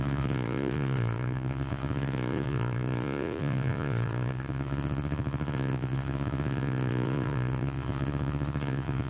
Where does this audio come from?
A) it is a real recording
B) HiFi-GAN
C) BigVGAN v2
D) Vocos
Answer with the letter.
D